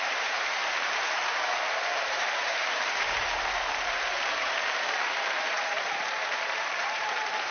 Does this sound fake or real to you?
fake